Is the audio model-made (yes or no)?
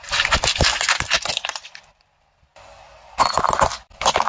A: no